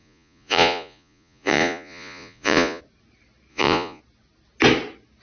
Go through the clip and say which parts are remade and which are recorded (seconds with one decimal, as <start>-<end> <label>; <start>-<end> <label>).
0.0-2.8 remade; 2.8-3.5 recorded; 3.5-4.0 remade; 4.0-5.2 recorded